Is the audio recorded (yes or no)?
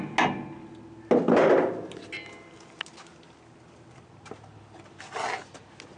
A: yes